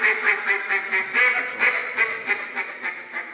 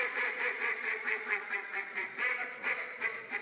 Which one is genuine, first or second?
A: first